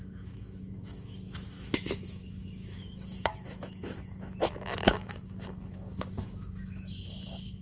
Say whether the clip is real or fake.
fake